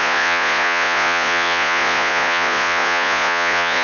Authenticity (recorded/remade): remade